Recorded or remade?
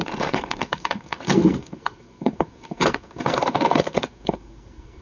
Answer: remade